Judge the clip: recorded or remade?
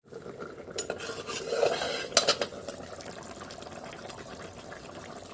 recorded